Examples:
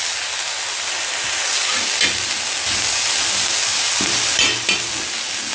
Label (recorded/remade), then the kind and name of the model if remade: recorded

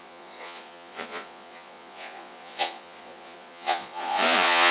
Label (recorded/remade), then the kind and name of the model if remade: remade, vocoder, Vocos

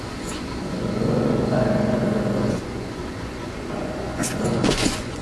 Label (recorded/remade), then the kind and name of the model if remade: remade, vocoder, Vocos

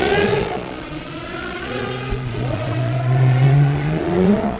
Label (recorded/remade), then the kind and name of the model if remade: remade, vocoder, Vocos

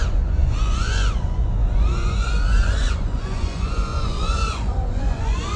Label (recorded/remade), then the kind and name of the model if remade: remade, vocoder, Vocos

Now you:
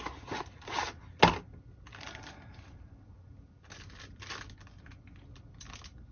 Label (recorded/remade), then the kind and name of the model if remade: recorded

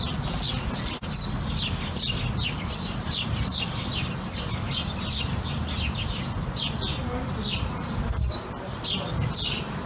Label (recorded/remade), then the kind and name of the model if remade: recorded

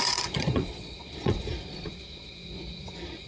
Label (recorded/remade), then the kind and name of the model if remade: remade, vocoder, Vocos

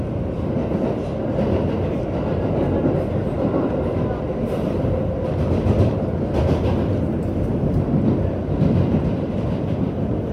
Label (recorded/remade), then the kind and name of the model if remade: recorded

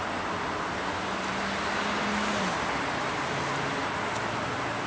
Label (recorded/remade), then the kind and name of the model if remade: recorded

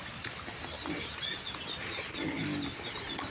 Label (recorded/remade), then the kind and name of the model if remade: recorded